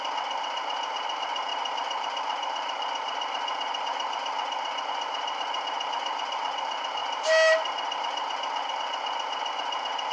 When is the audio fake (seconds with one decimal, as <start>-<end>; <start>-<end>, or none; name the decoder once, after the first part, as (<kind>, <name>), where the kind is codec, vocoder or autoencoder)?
1.5-4.9 (vocoder, BigVGAN v2)